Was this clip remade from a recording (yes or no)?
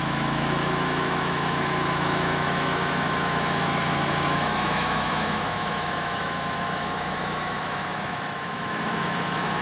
yes